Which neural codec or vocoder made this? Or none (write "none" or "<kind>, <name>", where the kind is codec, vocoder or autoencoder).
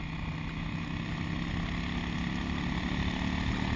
none